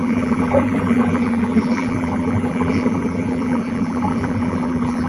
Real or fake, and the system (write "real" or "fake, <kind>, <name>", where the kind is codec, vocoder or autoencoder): fake, vocoder, BigVGAN v2